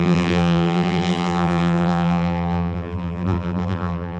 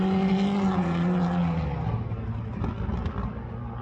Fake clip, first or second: first